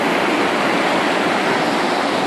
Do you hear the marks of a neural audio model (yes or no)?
no